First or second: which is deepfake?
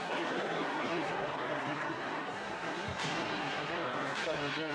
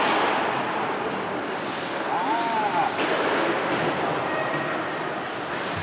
first